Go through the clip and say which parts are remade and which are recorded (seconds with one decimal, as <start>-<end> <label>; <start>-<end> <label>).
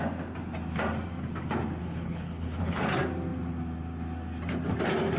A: 0.0-1.8 recorded; 1.8-2.8 remade; 2.8-5.2 recorded